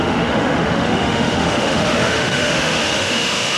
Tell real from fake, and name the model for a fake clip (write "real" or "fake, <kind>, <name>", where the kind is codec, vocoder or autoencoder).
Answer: fake, autoencoder, DAC-VAE